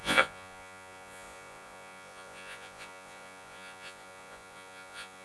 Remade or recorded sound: remade